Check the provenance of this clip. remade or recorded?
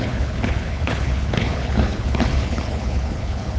remade